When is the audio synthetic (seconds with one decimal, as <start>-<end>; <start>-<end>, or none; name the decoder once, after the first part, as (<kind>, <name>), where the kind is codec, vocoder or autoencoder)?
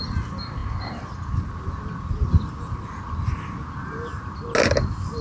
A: none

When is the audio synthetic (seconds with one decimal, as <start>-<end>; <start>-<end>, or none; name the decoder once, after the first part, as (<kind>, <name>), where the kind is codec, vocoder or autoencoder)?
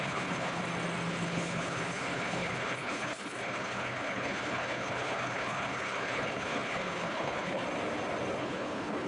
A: 0.0-0.6 (codec, HILCodec); 1.1-7.6; 8.4-9.1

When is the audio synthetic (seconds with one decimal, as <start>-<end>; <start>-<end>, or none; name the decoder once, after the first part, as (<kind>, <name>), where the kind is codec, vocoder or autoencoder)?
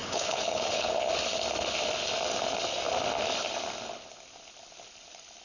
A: 0.0-0.9 (codec, HILCodec)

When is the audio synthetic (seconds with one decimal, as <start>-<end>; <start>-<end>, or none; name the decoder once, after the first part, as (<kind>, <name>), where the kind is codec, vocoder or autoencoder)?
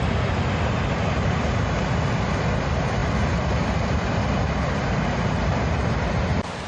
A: none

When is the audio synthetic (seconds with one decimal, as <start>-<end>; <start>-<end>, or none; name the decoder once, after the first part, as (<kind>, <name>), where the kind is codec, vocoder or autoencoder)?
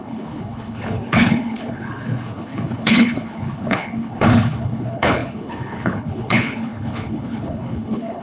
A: 0.0-8.2 (codec, HILCodec)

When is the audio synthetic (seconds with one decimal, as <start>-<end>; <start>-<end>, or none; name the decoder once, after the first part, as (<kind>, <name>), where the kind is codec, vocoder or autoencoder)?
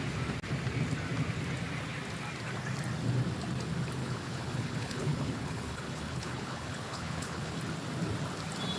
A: 4.0-7.6 (codec, HILCodec)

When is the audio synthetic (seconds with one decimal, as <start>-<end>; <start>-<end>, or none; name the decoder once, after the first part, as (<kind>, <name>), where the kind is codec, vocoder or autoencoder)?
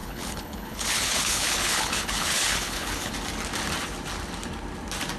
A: 0.0-3.1 (codec, HILCodec)